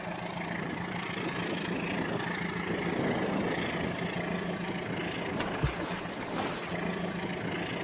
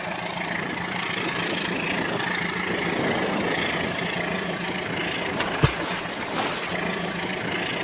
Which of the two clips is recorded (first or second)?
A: first